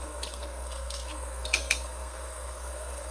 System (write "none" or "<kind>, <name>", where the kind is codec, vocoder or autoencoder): codec, SNAC